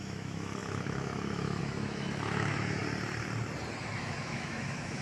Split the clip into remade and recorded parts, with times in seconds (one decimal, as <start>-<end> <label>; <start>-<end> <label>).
0.0-2.8 remade; 2.8-3.8 recorded; 3.8-5.0 remade

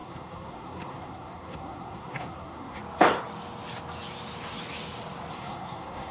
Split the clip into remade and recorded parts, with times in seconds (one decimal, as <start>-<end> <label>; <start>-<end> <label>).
0.0-2.8 remade; 2.8-5.3 recorded; 5.3-6.1 remade